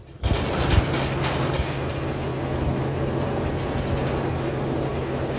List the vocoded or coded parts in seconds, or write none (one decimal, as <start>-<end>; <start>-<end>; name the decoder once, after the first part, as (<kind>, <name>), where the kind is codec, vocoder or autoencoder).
none